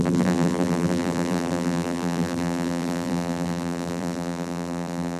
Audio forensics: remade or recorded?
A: remade